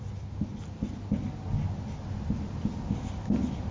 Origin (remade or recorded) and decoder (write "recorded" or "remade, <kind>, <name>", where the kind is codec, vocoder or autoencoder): recorded